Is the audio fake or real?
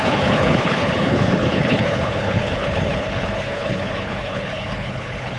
fake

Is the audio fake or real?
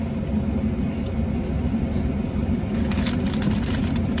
real